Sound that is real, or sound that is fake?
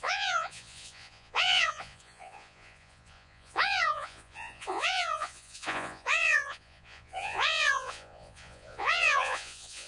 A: fake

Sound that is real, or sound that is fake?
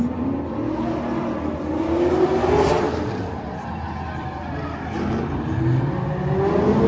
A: real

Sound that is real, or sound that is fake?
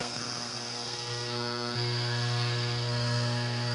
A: fake